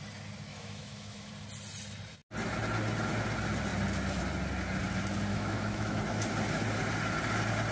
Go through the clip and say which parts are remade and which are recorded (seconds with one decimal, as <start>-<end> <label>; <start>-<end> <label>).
0.0-0.5 recorded; 0.5-1.3 remade; 1.3-5.3 recorded; 5.3-6.0 remade; 6.0-7.7 recorded